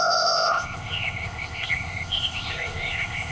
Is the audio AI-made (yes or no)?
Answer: yes